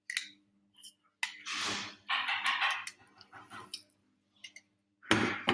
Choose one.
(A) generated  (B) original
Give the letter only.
B